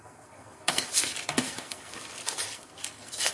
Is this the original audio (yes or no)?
no